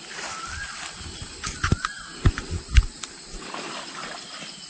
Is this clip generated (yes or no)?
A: no